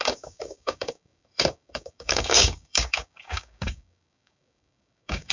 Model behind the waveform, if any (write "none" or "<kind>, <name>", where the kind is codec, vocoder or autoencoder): codec, DAC